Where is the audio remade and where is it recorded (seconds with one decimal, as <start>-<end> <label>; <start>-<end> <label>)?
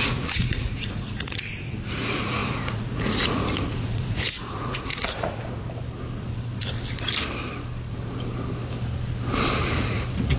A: 0.0-5.4 remade; 5.4-9.6 recorded; 9.6-10.4 remade